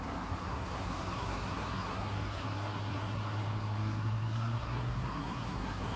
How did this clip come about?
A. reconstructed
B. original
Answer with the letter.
A